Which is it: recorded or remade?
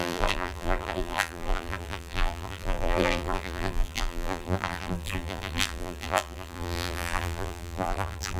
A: remade